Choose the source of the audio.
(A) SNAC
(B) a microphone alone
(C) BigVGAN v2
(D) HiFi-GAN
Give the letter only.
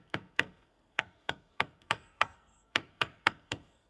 A